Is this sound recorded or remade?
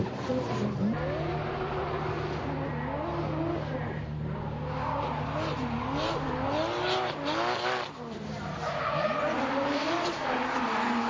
recorded